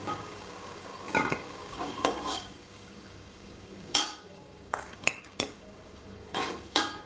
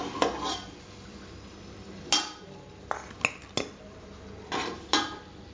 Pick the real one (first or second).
second